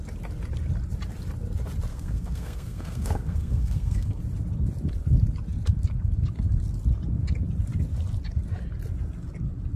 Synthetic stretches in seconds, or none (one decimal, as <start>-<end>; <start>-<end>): 1.9-4.2